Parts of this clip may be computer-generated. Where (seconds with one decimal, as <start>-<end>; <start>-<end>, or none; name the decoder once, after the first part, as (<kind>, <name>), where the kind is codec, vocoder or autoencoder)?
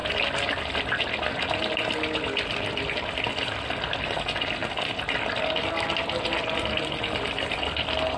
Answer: none